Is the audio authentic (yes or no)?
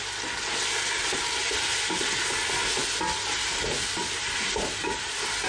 yes